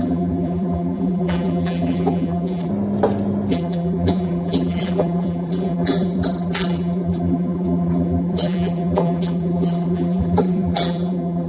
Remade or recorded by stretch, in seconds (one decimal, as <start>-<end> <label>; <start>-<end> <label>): 0.0-2.7 remade; 2.7-3.5 recorded; 3.5-11.5 remade